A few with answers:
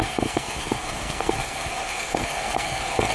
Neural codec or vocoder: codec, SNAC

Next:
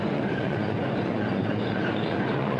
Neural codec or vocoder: vocoder, Vocos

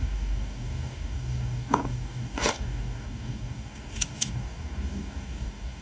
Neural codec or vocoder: codec, DAC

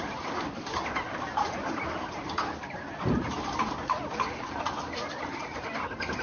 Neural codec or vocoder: none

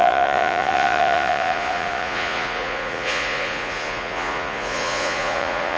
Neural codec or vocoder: vocoder, Vocos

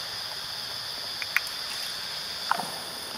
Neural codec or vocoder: none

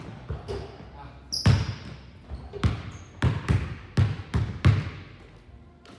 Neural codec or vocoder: none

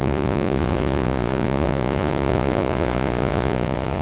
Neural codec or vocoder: vocoder, Vocos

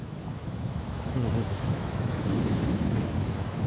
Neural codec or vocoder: autoencoder, DAC-VAE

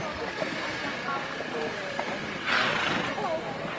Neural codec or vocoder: none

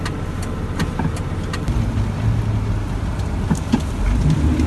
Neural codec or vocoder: none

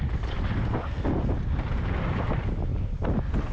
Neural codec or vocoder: none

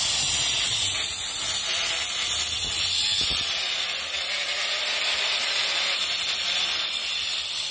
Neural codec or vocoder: none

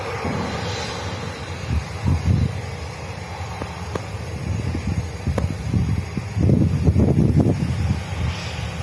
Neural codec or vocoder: none